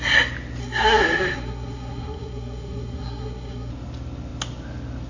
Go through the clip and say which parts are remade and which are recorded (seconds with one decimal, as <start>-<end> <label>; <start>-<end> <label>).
0.0-0.6 recorded; 0.6-3.7 remade; 3.7-5.1 recorded